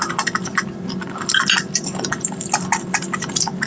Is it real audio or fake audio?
real